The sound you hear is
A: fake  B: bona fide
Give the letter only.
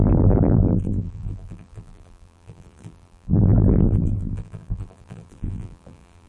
A